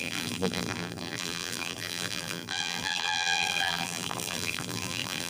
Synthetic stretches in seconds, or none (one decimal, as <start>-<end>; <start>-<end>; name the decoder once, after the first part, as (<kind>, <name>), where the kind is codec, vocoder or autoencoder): 0.0-5.3 (vocoder, BigVGAN v2)